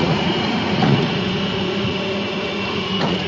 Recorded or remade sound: remade